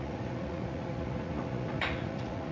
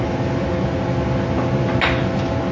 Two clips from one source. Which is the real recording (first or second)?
second